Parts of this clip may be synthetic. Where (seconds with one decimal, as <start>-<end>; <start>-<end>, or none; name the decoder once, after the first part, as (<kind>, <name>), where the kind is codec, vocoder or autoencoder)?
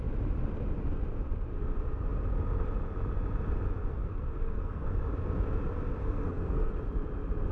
3.9-5.0 (codec, SNAC); 6.0-6.7